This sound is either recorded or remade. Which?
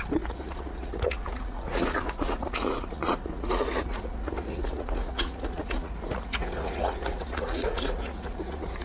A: remade